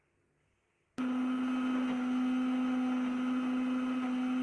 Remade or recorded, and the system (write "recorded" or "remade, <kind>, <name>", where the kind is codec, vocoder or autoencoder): recorded